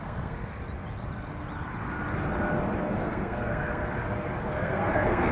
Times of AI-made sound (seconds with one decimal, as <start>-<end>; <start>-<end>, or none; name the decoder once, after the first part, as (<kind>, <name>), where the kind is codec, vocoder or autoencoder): 0.0-0.5 (codec, SNAC); 2.8-3.8; 4.4-5.3

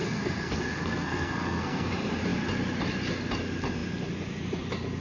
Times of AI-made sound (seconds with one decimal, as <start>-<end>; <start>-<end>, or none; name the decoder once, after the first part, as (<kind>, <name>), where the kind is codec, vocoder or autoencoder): 0.0-1.9 (codec, SNAC)

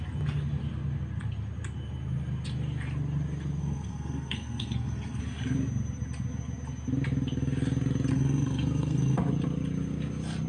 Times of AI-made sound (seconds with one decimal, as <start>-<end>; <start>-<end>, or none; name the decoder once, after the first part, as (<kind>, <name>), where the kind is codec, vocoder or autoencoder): 3.6-5.2 (codec, SNAC); 8.1-9.2

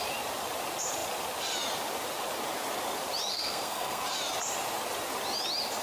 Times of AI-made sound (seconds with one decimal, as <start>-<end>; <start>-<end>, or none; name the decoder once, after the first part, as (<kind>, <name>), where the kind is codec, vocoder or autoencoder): 3.3-4.0 (codec, SNAC)

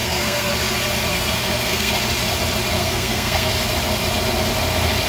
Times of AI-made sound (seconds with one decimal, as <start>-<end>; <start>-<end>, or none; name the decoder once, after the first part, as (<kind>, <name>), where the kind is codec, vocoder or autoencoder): 0.0-0.5 (codec, SNAC); 1.1-1.9; 2.8-3.5

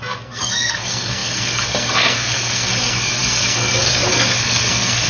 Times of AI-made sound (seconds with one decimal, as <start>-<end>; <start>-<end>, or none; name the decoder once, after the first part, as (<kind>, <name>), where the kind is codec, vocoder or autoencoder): 0.0-5.1 (codec, SNAC)

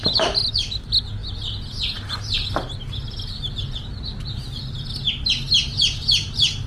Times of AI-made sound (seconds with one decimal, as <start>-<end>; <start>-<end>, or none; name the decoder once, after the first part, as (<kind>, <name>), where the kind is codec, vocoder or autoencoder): none